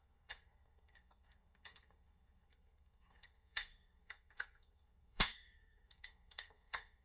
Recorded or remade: remade